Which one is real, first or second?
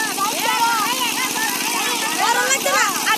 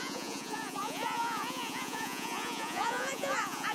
first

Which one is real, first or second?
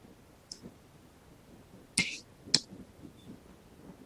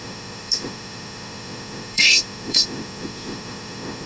first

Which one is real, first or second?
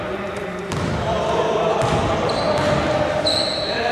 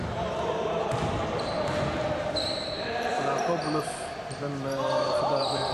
first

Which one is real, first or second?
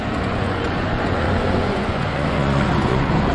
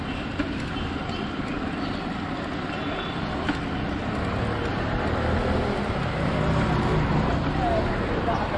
second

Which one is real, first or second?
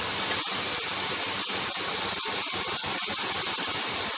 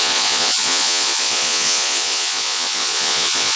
first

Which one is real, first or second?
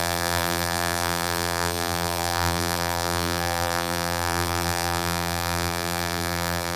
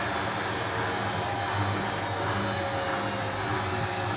second